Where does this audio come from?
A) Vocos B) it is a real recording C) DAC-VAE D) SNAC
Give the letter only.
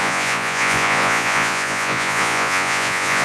A